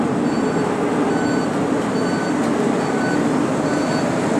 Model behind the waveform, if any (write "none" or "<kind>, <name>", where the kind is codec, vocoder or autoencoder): none